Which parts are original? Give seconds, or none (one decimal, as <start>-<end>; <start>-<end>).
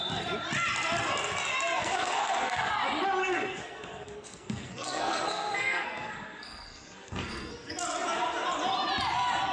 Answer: 0.0-1.8; 2.7-3.2; 7.7-9.5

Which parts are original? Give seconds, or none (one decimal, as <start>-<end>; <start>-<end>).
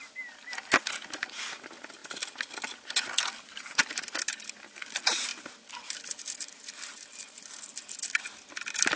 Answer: 0.0-9.0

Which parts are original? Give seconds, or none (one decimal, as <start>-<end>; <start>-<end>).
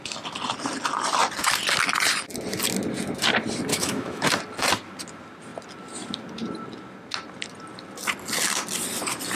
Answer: 0.0-3.7; 4.3-9.3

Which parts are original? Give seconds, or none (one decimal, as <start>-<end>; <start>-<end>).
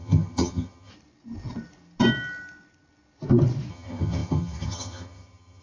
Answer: 0.9-3.7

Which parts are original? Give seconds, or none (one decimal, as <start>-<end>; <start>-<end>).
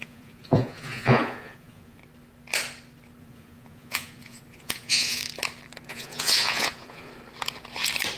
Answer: 2.0-3.2; 5.2-5.9; 7.1-8.2